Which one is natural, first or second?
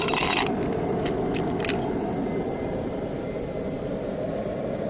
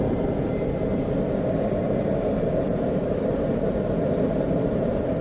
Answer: second